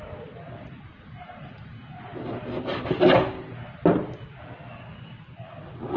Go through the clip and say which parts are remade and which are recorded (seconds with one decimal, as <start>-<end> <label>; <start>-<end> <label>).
0.0-6.0 recorded